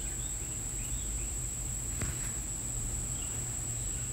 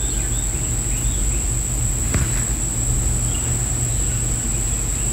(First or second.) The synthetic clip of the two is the first